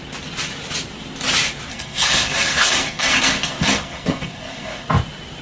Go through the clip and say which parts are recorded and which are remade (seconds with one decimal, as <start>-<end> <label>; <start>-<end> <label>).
0.0-1.7 recorded; 1.7-4.9 remade; 4.9-5.4 recorded